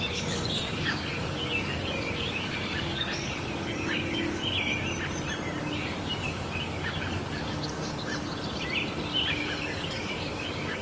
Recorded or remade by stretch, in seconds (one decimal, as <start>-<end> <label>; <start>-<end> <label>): 0.0-4.4 remade; 4.4-5.6 recorded; 5.6-8.1 remade; 8.1-9.3 recorded; 9.3-10.8 remade